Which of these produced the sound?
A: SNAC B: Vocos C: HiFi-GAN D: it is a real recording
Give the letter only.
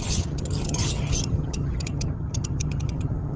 C